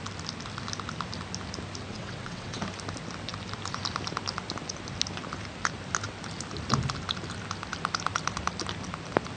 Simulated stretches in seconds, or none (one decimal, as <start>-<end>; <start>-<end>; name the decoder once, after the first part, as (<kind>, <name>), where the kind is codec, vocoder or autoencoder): 1.9-2.6 (vocoder, WaveNeXt)